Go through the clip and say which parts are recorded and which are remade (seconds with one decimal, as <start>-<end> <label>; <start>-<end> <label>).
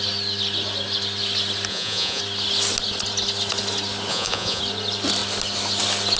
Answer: 0.0-1.7 recorded; 1.7-2.2 remade; 2.2-4.1 recorded; 4.1-4.6 remade; 4.6-6.2 recorded